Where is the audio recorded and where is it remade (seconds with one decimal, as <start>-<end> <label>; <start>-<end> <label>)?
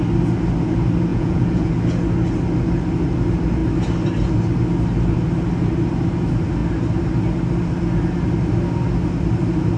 0.0-1.1 recorded; 1.1-1.7 remade; 1.7-9.8 recorded